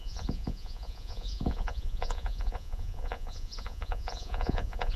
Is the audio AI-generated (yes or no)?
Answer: yes